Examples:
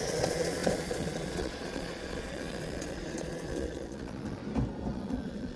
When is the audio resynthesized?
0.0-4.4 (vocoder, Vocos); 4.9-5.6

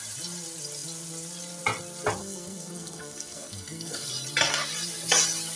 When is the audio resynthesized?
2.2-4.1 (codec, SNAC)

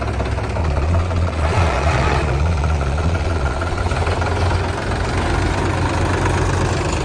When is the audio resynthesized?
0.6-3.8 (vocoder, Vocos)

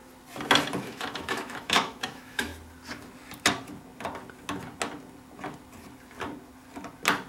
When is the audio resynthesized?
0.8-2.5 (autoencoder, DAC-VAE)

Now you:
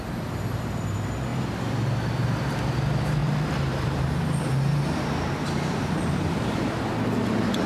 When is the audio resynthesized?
3.2-6.8 (vocoder, BigVGAN v2)